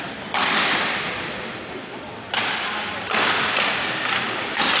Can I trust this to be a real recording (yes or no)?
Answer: yes